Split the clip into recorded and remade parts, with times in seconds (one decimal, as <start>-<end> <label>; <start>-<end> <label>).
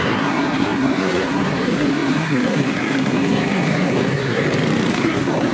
0.0-4.4 remade; 4.4-4.9 recorded; 4.9-5.5 remade